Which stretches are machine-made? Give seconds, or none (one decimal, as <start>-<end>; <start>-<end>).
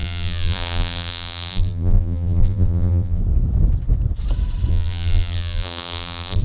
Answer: 0.0-3.2; 4.7-6.4